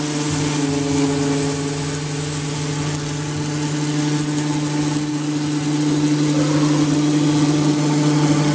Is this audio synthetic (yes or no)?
no